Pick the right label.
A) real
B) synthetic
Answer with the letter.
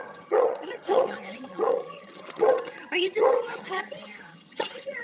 B